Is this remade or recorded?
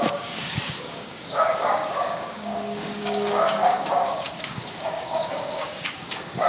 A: remade